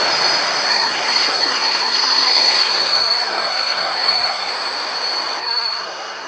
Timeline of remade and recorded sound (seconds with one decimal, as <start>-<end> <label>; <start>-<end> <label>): 0.0-0.7 recorded; 0.7-4.5 remade; 4.5-5.4 recorded; 5.4-6.3 remade